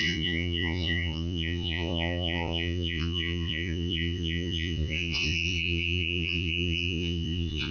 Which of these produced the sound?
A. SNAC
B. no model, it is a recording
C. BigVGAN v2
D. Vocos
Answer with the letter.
D